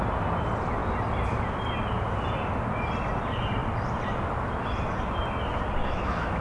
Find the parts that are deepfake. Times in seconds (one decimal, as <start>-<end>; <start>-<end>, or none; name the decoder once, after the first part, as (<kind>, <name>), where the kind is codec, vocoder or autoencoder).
5.8-6.4 (autoencoder, DAC-VAE)